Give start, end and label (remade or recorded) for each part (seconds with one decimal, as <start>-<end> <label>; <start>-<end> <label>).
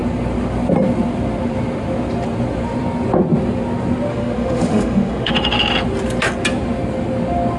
0.0-4.1 recorded; 4.1-5.3 remade; 5.3-7.6 recorded